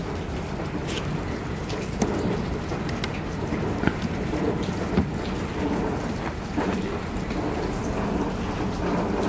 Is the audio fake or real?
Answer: real